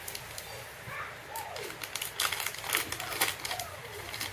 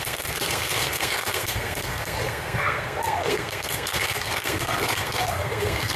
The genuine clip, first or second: first